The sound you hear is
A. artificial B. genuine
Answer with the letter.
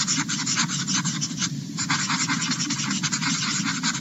B